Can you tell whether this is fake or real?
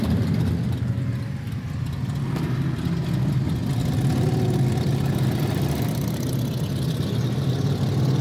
real